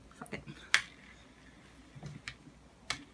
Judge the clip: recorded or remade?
recorded